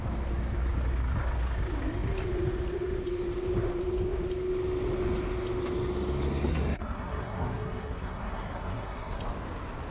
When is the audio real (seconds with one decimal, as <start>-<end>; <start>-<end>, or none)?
0.0-6.5; 9.2-9.9

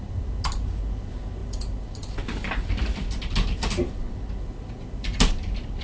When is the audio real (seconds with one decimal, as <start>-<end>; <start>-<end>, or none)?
0.0-5.8

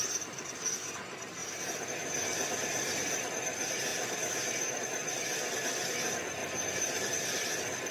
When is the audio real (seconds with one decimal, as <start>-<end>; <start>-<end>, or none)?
0.0-1.4; 1.9-3.9; 4.8-6.4; 7.1-7.9

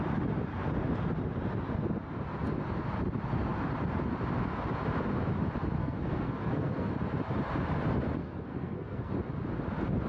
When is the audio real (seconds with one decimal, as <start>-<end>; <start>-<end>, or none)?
0.0-5.8; 6.9-8.2; 9.1-10.1

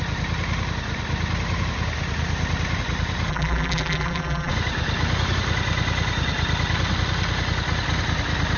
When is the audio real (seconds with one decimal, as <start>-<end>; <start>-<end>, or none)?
0.0-3.3; 4.5-8.6